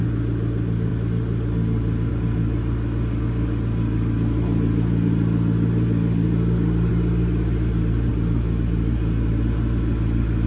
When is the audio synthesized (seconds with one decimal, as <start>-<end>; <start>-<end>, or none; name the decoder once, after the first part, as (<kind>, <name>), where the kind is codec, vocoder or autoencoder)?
none